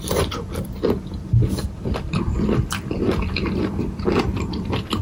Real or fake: fake